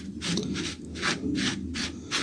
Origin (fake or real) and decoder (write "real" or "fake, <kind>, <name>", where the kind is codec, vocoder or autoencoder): real